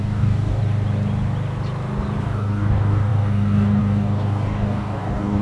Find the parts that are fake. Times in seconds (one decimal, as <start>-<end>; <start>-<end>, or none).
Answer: 0.0-0.6; 2.2-5.4